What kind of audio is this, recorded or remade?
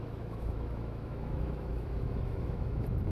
remade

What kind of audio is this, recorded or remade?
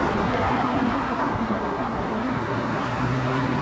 remade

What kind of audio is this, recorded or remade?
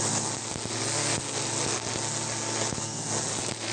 recorded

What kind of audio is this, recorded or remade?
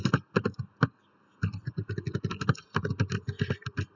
recorded